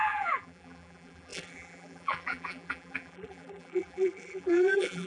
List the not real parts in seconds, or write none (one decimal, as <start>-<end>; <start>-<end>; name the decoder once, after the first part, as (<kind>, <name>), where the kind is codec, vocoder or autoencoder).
0.0-5.1 (vocoder, BigVGAN v2)